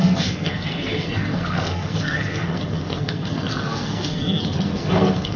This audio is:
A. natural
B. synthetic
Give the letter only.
B